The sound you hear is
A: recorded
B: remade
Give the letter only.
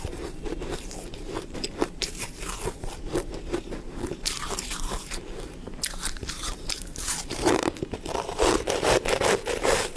B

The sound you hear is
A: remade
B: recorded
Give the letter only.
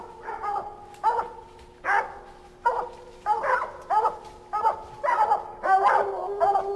B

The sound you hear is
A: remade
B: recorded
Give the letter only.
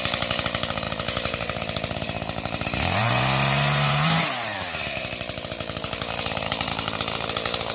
A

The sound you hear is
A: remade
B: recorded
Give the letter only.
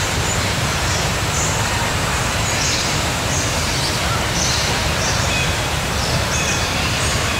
A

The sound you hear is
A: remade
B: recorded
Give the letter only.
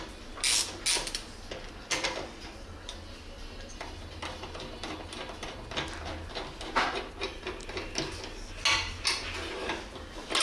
B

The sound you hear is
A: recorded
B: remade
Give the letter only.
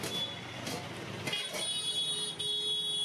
A